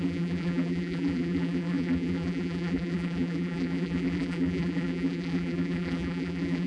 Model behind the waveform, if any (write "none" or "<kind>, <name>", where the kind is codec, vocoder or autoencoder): vocoder, BigVGAN v2